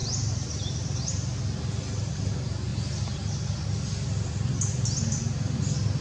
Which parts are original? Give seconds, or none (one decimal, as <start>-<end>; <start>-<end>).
1.4-6.0